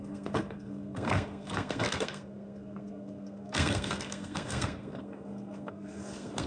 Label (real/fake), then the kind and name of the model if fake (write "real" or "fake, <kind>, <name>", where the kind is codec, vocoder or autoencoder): fake, codec, SNAC